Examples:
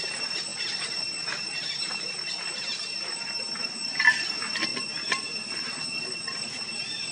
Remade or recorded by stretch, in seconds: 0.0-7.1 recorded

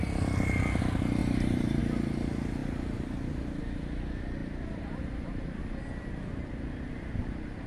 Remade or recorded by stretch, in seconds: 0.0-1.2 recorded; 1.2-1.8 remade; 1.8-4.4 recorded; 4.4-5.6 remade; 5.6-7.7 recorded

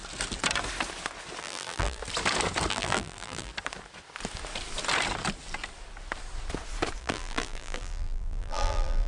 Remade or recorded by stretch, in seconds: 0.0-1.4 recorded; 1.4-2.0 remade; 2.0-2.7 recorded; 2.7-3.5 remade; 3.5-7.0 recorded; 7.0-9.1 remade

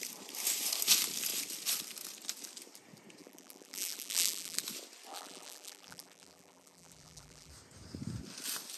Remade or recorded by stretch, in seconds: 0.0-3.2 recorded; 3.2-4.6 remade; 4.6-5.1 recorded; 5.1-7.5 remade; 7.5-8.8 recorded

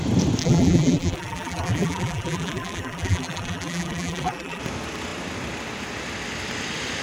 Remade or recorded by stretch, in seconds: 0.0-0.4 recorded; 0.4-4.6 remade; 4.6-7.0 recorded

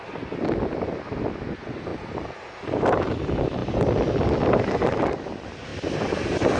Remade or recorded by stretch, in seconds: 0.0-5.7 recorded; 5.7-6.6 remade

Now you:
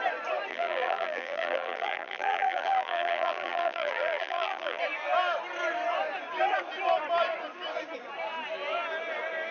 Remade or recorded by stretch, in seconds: 0.0-0.5 recorded; 0.5-4.8 remade; 4.8-9.5 recorded